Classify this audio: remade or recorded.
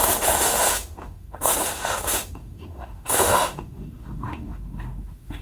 remade